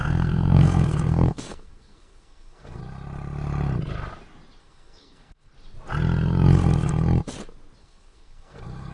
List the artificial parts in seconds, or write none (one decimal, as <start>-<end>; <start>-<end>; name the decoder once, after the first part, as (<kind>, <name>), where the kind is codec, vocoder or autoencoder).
0.0-2.8 (codec, SNAC); 4.6-5.5; 7.8-8.9